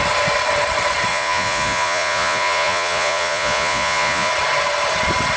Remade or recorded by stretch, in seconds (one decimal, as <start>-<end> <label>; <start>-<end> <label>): 0.0-1.1 recorded; 1.1-4.3 remade; 4.3-5.4 recorded